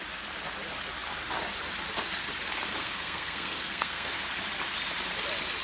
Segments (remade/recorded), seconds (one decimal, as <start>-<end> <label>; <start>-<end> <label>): 0.0-2.8 recorded; 2.8-4.2 remade; 4.2-5.6 recorded